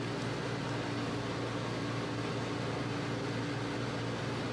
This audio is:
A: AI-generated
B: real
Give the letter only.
B